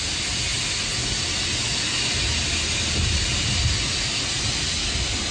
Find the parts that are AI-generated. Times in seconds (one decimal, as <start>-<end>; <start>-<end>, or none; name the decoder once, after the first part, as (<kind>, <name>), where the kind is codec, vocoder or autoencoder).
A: none